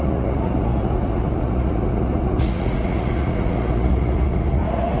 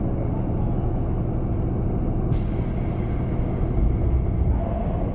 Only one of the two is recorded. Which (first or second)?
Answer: second